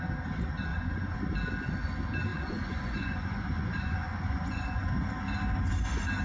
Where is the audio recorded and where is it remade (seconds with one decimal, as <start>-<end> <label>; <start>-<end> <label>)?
0.0-0.7 recorded; 0.7-1.2 remade; 1.2-2.3 recorded; 2.3-4.9 remade; 4.9-6.2 recorded